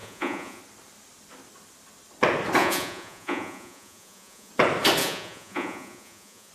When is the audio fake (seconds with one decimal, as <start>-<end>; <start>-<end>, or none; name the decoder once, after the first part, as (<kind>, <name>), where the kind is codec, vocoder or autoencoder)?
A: 0.0-0.6 (vocoder, Vocos); 2.6-4.5; 5.0-6.5